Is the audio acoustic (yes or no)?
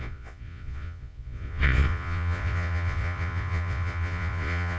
no